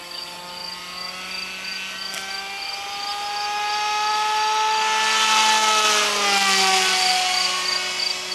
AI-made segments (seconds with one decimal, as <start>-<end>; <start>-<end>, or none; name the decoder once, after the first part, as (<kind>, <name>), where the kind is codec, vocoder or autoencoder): none